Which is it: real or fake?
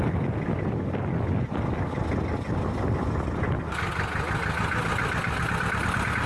real